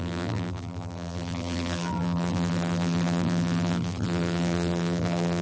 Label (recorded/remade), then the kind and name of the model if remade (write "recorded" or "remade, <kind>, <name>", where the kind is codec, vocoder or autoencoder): remade, vocoder, BigVGAN v2